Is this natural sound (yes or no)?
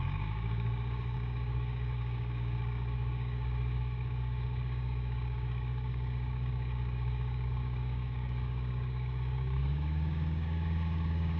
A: no